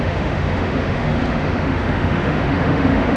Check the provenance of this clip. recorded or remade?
remade